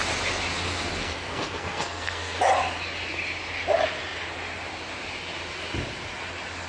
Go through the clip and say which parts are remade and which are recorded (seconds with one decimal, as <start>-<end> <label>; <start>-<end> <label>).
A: 0.0-1.0 recorded; 1.0-2.4 remade; 2.4-6.7 recorded